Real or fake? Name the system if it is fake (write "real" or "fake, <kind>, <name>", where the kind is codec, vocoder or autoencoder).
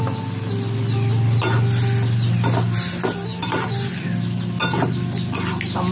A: real